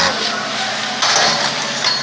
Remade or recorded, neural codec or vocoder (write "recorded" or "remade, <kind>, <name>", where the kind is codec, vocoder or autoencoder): recorded